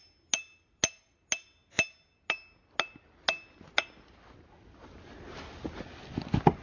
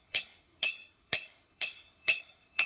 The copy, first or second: second